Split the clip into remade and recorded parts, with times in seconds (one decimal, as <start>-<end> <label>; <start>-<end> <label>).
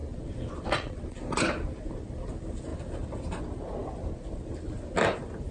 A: 0.0-5.5 recorded